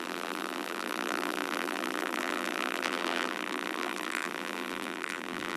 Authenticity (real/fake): fake